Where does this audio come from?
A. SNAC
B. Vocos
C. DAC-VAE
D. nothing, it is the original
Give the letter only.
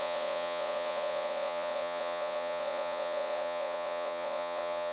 B